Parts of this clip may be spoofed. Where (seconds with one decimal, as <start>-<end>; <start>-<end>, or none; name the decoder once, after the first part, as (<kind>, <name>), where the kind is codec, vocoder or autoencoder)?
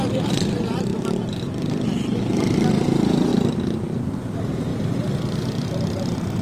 0.0-0.9 (vocoder, BigVGAN v2); 2.7-3.3; 4.0-4.7; 6.0-6.4